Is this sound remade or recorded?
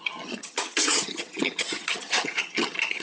remade